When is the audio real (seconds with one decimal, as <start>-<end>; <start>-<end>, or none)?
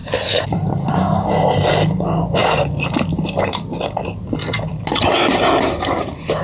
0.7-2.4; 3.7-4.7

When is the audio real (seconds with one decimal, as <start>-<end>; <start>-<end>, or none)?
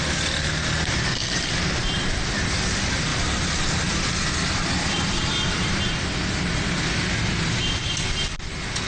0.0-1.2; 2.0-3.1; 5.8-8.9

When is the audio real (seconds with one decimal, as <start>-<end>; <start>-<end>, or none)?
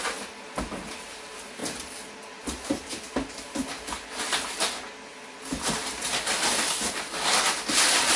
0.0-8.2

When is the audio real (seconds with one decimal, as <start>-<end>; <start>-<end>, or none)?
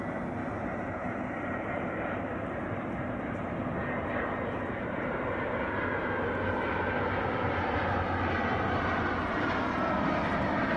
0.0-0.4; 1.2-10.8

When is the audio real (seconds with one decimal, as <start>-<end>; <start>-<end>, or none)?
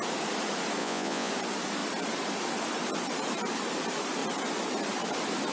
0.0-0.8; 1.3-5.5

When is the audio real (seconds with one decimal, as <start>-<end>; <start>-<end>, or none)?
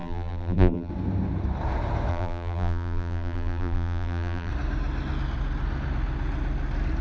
0.9-2.1; 4.5-7.0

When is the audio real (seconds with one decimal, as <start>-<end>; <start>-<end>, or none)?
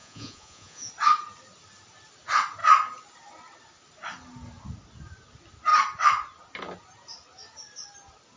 0.9-8.4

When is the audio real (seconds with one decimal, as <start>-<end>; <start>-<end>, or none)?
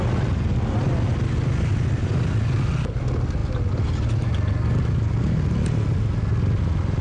0.0-7.0